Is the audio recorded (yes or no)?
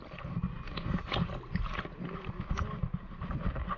yes